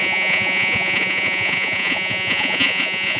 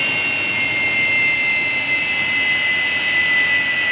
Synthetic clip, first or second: first